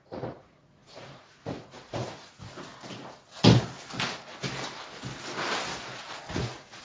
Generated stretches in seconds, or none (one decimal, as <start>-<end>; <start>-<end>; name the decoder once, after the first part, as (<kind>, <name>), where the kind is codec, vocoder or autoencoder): 0.0-2.7 (vocoder, Vocos); 6.3-6.8